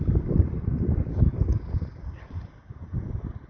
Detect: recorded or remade recorded